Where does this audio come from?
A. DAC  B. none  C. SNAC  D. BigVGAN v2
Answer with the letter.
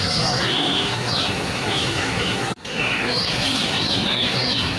C